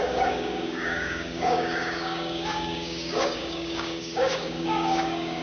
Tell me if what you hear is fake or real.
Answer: fake